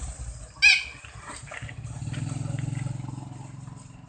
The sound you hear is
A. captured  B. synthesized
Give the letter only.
A